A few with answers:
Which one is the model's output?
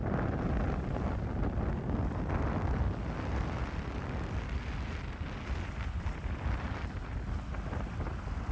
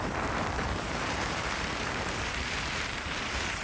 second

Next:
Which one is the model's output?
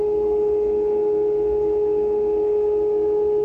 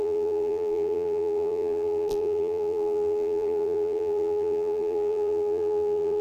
second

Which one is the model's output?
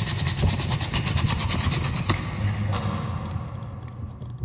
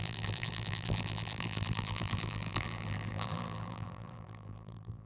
second